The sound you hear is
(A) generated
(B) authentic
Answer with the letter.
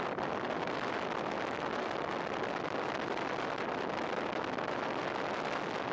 B